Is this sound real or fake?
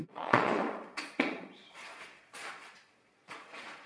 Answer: fake